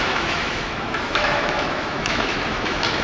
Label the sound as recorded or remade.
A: remade